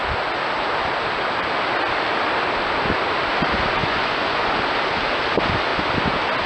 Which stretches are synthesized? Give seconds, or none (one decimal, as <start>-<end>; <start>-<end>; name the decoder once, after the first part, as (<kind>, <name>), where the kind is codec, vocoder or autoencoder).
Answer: 3.8-4.6 (vocoder, Vocos)